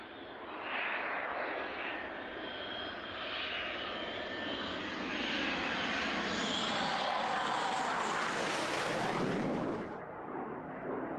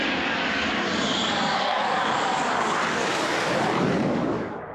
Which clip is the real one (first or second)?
first